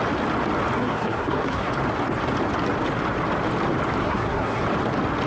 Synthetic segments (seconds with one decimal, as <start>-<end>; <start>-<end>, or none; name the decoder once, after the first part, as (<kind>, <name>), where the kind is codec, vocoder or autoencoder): 0.8-1.7 (codec, SNAC); 4.0-4.6